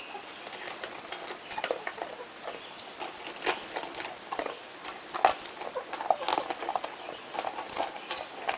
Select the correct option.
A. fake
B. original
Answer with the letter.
B